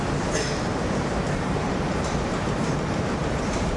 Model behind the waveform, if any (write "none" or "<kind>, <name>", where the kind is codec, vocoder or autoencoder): vocoder, BigVGAN v2